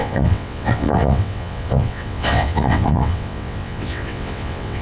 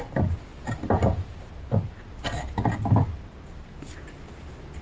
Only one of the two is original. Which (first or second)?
second